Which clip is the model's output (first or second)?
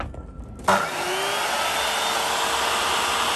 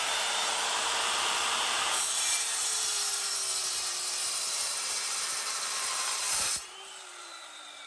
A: second